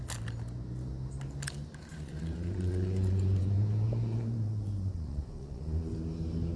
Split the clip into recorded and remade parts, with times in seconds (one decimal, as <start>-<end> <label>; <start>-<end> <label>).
0.0-1.9 recorded; 1.9-5.9 remade; 5.9-6.6 recorded